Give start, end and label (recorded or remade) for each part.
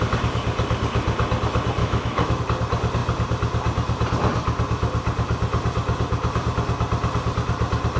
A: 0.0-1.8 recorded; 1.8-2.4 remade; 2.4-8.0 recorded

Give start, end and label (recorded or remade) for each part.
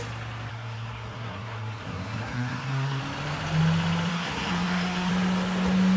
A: 0.0-0.5 recorded; 0.5-3.0 remade; 3.0-4.1 recorded; 4.1-5.1 remade; 5.1-6.0 recorded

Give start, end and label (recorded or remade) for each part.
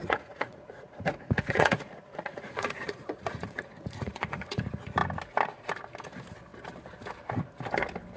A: 0.0-4.6 remade; 4.6-8.2 recorded